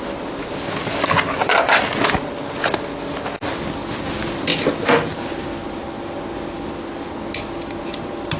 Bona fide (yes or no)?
yes